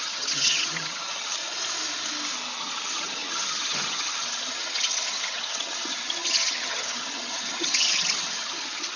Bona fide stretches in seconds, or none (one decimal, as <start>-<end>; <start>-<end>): 1.4-2.6